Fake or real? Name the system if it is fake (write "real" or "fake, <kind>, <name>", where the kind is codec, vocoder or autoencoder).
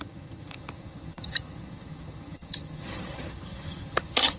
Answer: fake, vocoder, HiFi-GAN